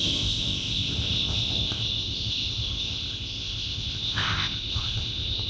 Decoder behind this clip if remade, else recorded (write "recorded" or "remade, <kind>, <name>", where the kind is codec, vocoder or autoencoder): remade, codec, ZipCodec